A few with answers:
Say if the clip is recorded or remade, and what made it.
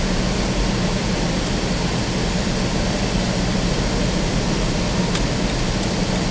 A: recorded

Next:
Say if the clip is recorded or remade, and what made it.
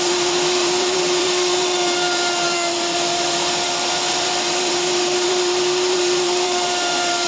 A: remade, vocoder, BigVGAN v2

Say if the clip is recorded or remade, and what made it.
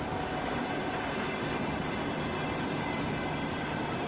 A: recorded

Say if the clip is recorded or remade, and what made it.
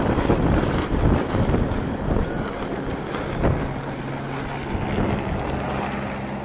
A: recorded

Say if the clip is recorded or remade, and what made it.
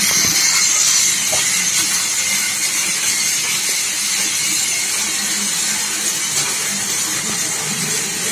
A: recorded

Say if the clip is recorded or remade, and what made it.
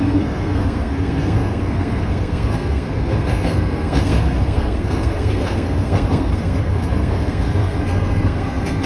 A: remade, codec, SNAC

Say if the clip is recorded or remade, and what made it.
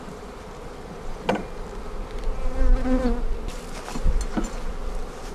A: recorded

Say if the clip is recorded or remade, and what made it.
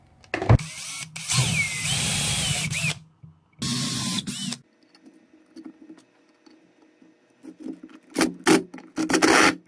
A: recorded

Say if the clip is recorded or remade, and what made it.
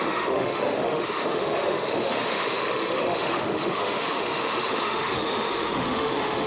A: remade, autoencoder, DAC-VAE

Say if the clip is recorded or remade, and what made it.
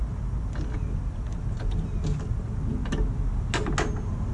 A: recorded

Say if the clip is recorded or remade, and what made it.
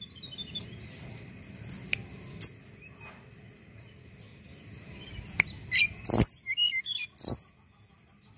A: recorded